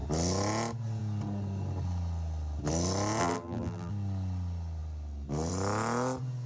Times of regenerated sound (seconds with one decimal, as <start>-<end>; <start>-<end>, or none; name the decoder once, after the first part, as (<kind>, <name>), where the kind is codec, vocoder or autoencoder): 3.2-3.9 (vocoder, BigVGAN v2)